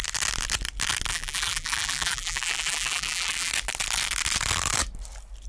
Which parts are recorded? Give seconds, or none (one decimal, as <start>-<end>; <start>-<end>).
0.0-1.1; 3.5-5.5

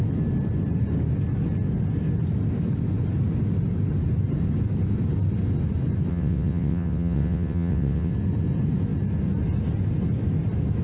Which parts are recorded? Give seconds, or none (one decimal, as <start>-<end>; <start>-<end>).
0.0-6.1; 8.1-10.8